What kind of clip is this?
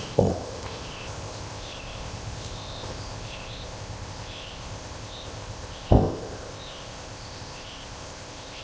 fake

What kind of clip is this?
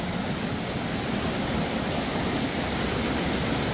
real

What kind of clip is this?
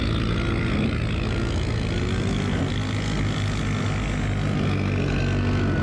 real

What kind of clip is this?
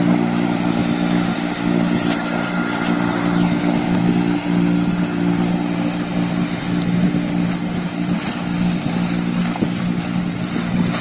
real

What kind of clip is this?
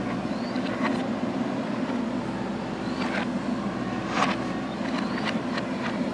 real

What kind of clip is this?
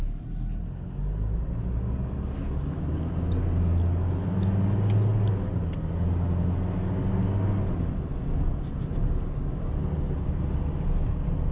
real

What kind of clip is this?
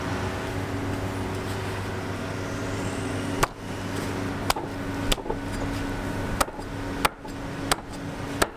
real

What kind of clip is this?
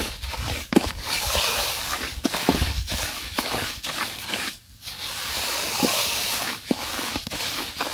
fake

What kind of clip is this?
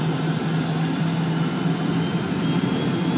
real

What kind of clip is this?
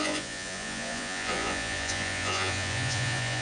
fake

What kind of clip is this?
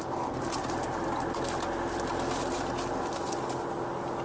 real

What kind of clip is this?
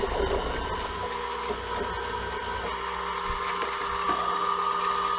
real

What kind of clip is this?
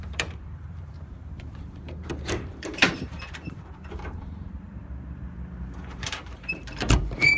fake